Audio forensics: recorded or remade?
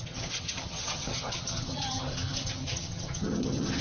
remade